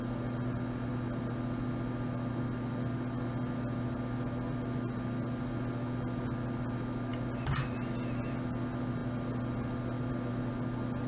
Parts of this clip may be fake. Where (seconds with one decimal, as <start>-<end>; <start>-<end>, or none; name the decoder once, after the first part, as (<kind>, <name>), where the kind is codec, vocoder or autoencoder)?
none